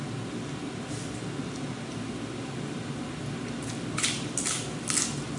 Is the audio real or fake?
real